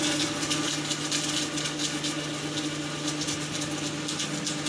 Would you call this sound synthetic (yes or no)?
no